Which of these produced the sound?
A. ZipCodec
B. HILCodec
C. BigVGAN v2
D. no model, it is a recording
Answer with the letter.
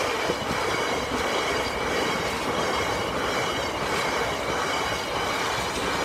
D